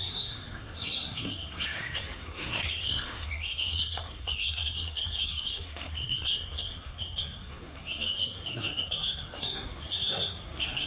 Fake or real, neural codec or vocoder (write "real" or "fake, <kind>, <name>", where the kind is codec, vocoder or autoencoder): fake, codec, SNAC